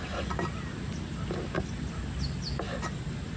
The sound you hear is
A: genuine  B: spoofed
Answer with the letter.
A